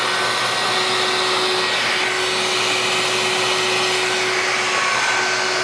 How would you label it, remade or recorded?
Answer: recorded